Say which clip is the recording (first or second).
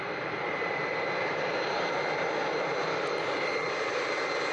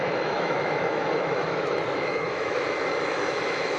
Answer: first